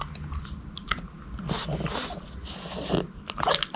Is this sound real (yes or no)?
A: yes